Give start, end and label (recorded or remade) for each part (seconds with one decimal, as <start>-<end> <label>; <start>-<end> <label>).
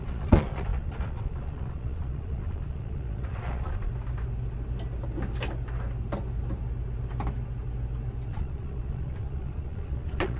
0.0-3.9 remade; 3.9-8.3 recorded; 8.3-10.4 remade